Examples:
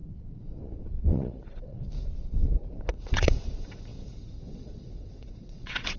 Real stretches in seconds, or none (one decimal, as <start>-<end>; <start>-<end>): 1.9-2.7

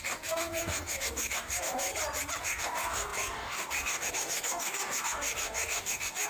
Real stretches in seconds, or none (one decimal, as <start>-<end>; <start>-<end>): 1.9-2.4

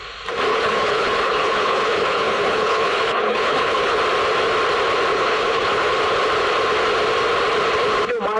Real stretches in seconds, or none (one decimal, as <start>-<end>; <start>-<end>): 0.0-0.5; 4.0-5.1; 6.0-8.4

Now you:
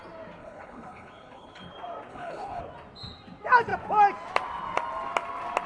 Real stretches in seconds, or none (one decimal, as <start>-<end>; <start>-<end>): 0.0-0.4; 1.7-2.1; 2.6-5.7

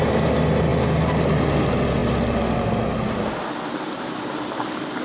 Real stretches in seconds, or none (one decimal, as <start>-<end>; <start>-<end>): 0.0-5.0

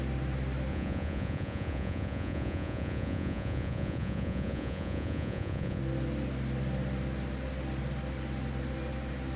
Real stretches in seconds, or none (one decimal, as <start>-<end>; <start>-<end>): 0.0-0.7; 5.8-9.4